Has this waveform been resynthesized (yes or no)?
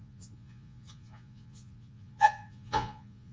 yes